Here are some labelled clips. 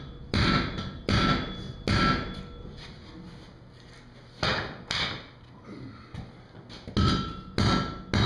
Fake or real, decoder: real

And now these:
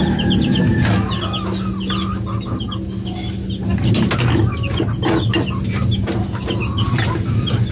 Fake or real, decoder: real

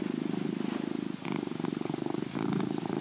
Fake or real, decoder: real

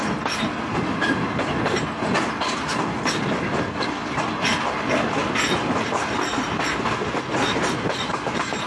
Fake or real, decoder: real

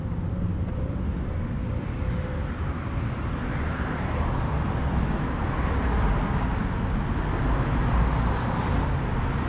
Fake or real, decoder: real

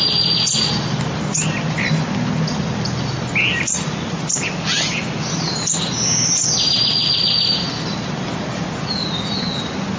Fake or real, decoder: real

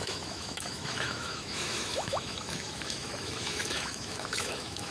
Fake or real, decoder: fake, autoencoder, DAC-VAE